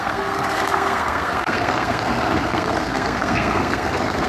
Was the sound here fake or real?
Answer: fake